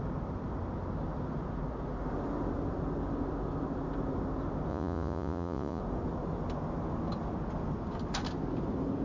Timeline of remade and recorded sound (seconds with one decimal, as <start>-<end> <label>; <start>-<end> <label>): 0.0-4.7 recorded; 4.7-5.8 remade; 5.8-9.0 recorded